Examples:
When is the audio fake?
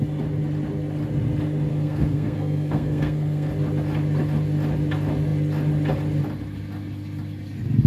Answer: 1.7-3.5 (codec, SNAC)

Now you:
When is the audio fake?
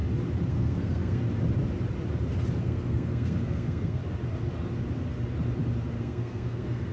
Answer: 0.5-1.2 (codec, SNAC); 2.6-4.0; 6.0-6.9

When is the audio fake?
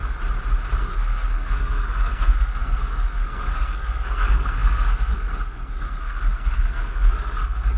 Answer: 0.8-7.8 (codec, SNAC)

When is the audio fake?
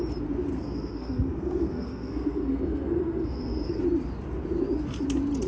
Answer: 0.5-3.8 (codec, SNAC)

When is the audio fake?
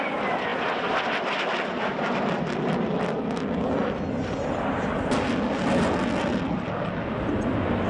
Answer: none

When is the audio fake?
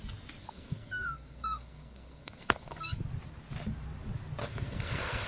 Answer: 0.4-3.0 (codec, SNAC); 4.4-5.3